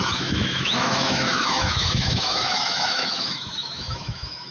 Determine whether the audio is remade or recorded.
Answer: remade